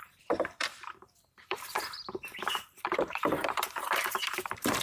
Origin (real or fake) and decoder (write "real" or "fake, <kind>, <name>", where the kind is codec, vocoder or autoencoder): fake, vocoder, BigVGAN v2